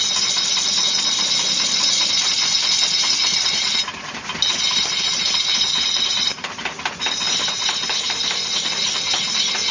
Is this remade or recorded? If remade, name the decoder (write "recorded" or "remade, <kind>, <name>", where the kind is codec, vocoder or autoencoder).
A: recorded